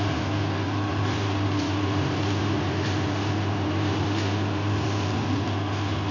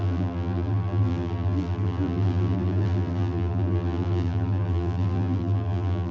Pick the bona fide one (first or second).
first